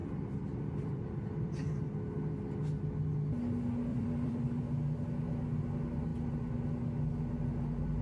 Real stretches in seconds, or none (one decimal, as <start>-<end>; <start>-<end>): 1.8-3.9; 4.6-8.0